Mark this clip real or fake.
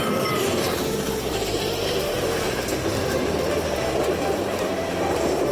real